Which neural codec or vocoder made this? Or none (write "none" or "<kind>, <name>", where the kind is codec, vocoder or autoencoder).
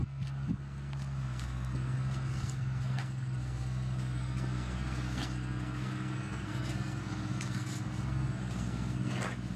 codec, SNAC